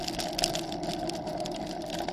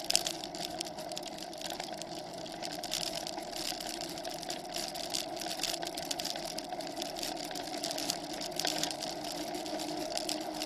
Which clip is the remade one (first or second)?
second